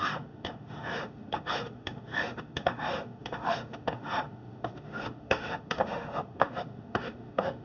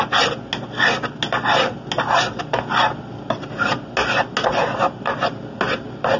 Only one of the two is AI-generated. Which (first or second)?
first